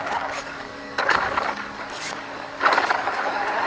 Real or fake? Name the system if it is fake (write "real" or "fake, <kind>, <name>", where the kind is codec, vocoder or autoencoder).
fake, codec, DAC